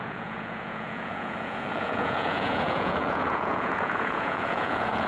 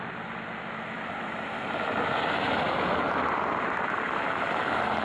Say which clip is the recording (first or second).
second